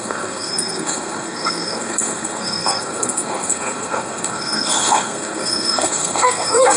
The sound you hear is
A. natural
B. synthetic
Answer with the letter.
B